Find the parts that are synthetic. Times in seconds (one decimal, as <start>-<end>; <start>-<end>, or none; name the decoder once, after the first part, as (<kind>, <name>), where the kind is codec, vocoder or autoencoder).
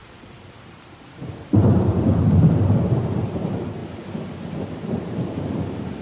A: 0.0-3.8 (vocoder, BigVGAN v2); 4.8-6.0